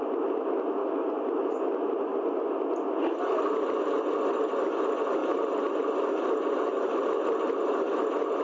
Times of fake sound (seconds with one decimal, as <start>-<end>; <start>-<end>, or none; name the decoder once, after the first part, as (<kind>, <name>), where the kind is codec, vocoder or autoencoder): 5.2-5.7 (vocoder, BigVGAN v2); 6.7-7.9